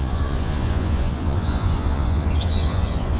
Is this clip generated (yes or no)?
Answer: yes